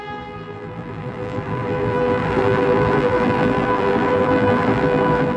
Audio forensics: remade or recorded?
remade